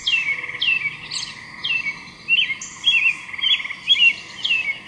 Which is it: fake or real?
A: real